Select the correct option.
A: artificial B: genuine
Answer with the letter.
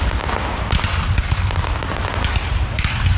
B